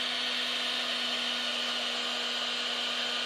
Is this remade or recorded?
recorded